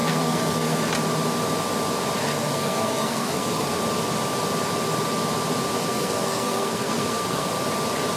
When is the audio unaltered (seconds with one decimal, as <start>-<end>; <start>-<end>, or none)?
0.9-2.2; 3.8-5.8; 7.5-8.2